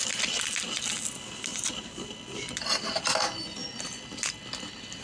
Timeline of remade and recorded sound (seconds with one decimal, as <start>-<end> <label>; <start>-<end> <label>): 0.0-5.0 recorded